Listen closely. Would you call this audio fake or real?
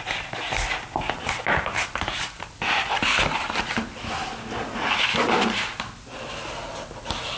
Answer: real